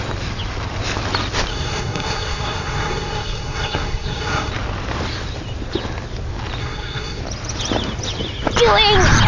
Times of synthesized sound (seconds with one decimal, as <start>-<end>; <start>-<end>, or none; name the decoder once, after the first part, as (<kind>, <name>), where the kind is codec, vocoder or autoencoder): 1.5-4.5 (codec, SNAC); 6.6-7.2